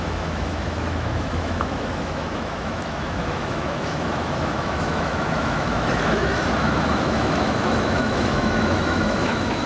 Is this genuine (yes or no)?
no